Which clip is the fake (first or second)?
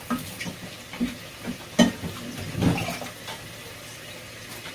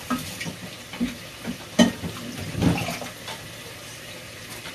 second